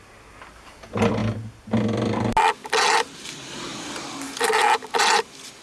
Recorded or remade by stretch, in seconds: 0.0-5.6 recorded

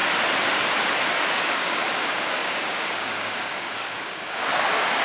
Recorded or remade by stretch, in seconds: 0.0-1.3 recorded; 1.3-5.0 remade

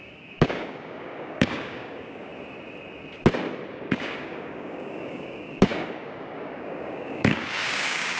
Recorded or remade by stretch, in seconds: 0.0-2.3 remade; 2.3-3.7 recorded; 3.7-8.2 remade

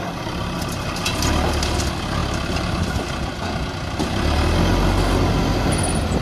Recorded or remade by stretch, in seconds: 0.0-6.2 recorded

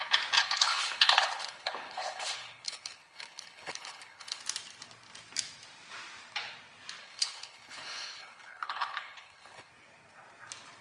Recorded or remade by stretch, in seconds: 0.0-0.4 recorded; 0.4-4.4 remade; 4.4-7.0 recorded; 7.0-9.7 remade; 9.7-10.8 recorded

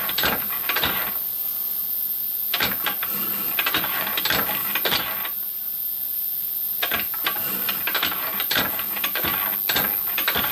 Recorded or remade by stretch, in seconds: 0.0-9.3 remade; 9.3-10.0 recorded; 10.0-10.5 remade

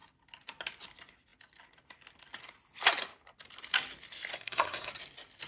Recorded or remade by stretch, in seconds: 0.0-4.3 recorded; 4.3-4.9 remade; 4.9-5.5 recorded